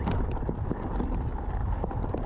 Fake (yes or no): no